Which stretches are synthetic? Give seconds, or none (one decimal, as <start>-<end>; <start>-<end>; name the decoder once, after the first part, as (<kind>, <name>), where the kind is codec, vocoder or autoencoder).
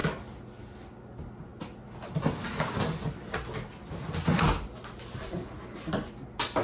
none